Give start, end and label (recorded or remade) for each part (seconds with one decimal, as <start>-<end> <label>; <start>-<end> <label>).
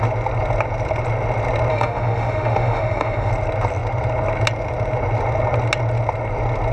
0.0-1.7 recorded; 1.7-3.3 remade; 3.3-6.7 recorded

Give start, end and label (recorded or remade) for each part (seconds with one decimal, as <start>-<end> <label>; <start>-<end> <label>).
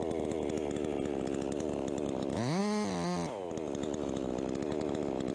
0.0-5.3 recorded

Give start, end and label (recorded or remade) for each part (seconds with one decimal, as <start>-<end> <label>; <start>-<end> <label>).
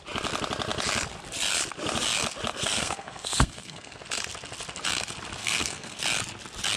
0.0-2.5 recorded; 2.5-4.0 remade; 4.0-5.4 recorded; 5.4-6.0 remade; 6.0-6.8 recorded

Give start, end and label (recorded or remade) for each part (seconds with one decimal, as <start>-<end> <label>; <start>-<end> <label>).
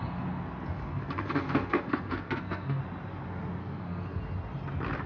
0.0-0.8 recorded; 0.8-2.8 remade; 2.8-3.6 recorded; 3.6-4.2 remade; 4.2-5.1 recorded